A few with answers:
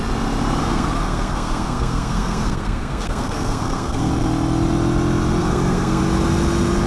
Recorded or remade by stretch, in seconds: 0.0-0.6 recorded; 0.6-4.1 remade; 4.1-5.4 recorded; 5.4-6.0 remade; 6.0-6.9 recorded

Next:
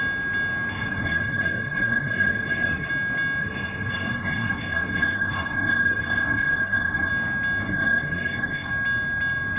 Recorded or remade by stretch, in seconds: 0.0-0.7 recorded; 0.7-2.9 remade; 2.9-3.4 recorded; 3.4-7.1 remade; 7.1-7.6 recorded; 7.6-8.7 remade; 8.7-9.6 recorded

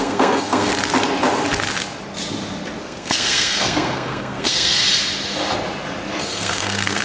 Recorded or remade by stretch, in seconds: 0.0-0.7 remade; 0.7-2.8 recorded; 2.8-4.8 remade; 4.8-6.2 recorded; 6.2-7.0 remade